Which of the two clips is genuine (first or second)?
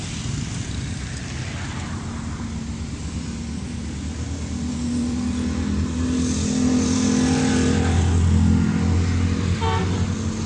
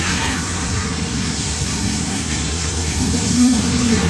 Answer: first